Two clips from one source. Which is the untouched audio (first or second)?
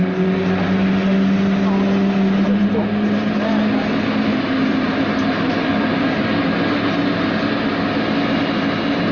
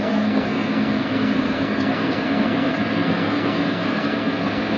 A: first